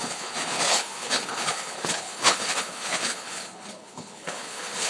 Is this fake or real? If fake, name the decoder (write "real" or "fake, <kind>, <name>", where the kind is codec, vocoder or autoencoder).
fake, codec, HILCodec